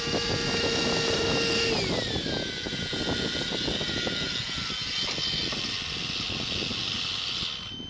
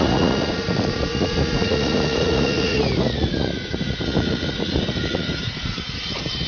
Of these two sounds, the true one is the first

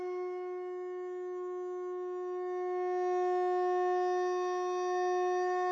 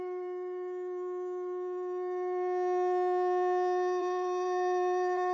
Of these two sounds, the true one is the first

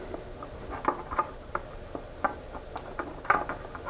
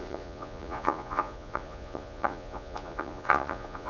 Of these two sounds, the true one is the first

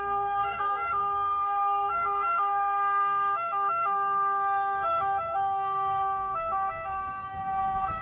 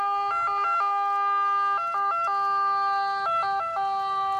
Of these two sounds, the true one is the second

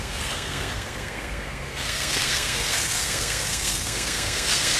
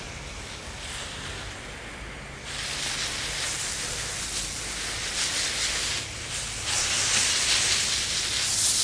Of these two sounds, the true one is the second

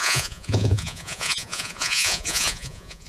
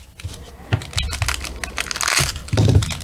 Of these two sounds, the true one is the second